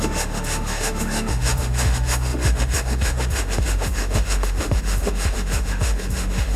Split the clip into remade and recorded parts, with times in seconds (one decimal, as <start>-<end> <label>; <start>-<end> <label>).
0.0-6.6 remade